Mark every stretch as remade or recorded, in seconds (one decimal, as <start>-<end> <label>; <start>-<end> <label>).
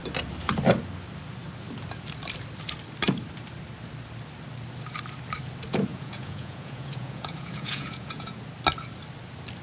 0.0-5.9 recorded; 5.9-8.4 remade; 8.4-9.6 recorded